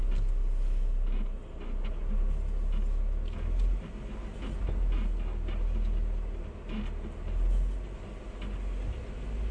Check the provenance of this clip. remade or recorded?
recorded